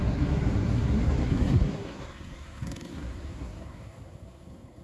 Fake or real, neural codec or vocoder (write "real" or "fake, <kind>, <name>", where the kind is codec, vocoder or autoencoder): fake, codec, SNAC